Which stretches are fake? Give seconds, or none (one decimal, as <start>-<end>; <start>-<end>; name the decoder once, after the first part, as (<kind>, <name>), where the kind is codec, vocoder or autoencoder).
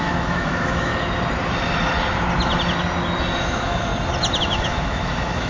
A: 0.0-0.9 (autoencoder, DAC-VAE); 3.4-3.9; 4.4-5.5